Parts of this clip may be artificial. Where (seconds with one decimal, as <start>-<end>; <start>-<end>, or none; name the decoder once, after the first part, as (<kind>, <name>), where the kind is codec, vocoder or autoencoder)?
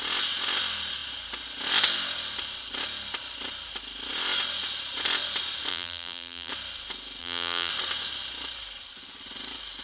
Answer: 5.7-6.5 (vocoder, BigVGAN v2); 7.2-7.7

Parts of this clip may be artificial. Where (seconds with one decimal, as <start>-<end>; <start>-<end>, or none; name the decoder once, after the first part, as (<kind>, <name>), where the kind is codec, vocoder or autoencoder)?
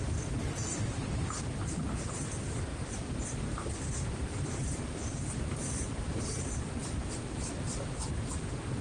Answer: 0.6-2.3 (vocoder, BigVGAN v2); 2.7-6.8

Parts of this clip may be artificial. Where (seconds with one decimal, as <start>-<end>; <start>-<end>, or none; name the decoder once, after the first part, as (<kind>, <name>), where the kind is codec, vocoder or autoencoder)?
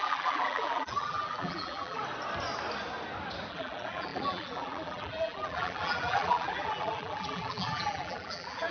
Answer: 0.0-2.0 (vocoder, BigVGAN v2); 3.5-8.7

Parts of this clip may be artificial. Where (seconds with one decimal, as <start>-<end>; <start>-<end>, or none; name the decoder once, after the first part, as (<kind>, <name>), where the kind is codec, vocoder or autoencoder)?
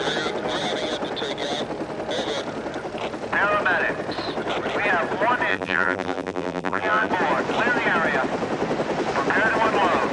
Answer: 5.5-7.1 (vocoder, BigVGAN v2)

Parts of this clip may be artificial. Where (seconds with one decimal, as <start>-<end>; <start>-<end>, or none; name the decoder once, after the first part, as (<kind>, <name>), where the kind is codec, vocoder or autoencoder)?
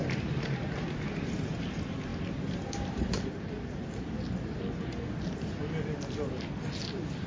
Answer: none